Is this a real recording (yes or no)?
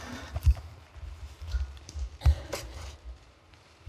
no